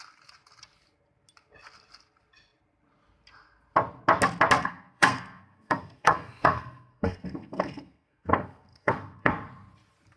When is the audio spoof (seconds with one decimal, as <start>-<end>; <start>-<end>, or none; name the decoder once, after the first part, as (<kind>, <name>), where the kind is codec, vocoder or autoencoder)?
4.6-9.3 (codec, SNAC)